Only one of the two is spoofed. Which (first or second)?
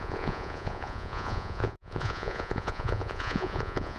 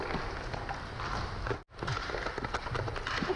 first